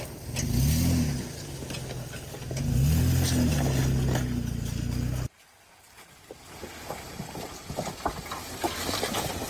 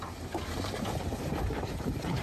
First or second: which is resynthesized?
second